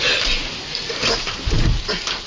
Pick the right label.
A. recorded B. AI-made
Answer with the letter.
A